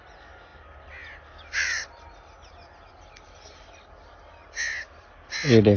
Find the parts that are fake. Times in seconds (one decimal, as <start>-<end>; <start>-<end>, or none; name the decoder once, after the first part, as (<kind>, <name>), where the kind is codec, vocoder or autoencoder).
none